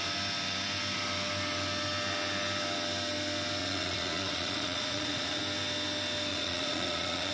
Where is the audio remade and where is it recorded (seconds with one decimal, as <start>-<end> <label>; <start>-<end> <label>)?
0.0-3.6 recorded; 3.6-5.4 remade; 5.4-6.3 recorded; 6.3-7.3 remade